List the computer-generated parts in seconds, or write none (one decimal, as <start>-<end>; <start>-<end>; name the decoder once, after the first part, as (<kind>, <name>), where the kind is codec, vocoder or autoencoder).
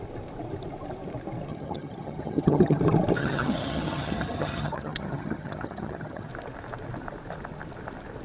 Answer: 1.5-2.8 (vocoder, HiFi-GAN); 3.2-6.3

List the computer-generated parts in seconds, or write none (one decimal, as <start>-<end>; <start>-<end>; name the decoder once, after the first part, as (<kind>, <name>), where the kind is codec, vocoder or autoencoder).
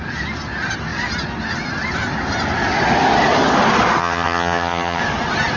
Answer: 4.0-5.0 (vocoder, HiFi-GAN)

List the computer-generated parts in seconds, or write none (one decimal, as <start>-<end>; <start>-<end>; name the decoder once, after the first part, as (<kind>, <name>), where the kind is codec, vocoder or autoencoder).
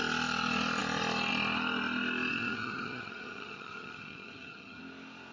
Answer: 2.3-4.8 (vocoder, HiFi-GAN)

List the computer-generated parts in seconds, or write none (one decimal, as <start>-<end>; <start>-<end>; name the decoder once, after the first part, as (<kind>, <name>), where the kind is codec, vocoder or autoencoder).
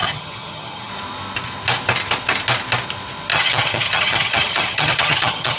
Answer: 0.0-0.9 (vocoder, HiFi-GAN); 3.3-5.6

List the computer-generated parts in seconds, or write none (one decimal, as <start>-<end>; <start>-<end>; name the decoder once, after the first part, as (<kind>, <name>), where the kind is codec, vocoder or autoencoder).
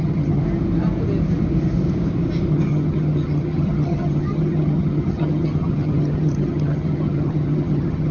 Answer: 0.0-0.4 (vocoder, HiFi-GAN); 2.5-8.1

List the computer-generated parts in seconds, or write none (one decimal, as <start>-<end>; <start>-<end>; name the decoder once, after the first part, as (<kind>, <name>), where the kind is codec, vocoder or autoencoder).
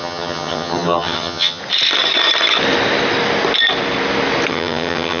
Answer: 0.0-1.6 (vocoder, HiFi-GAN); 4.5-5.2